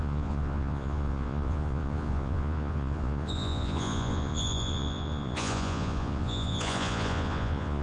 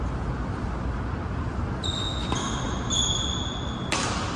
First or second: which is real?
second